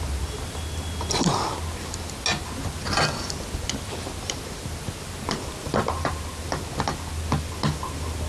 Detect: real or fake real